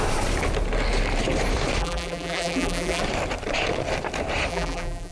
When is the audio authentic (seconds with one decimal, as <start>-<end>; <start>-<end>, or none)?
0.0-1.8; 3.0-4.5